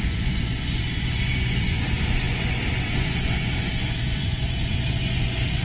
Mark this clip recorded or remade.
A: remade